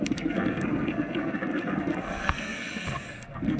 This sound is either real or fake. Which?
fake